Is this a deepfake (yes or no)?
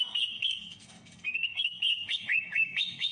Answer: yes